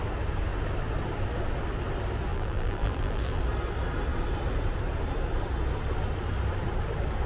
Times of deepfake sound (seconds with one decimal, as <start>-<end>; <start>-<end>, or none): 2.3-3.4

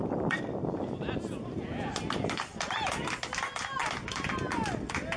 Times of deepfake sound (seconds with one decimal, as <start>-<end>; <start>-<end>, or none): 0.0-3.1